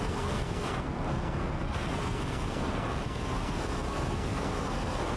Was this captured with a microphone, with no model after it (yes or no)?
no